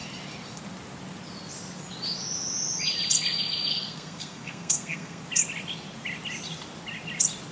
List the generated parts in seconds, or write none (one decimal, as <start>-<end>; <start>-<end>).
3.7-5.2